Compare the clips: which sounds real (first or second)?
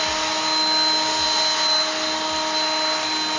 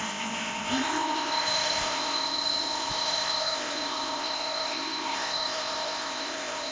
first